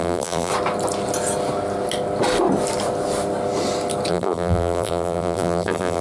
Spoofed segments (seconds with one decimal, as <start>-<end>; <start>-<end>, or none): 0.0-0.5; 4.1-6.0